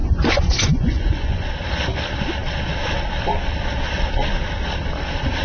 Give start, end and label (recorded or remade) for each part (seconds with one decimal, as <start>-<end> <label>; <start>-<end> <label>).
0.0-1.5 remade; 1.5-5.4 recorded